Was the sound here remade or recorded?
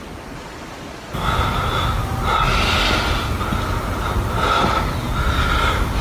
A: recorded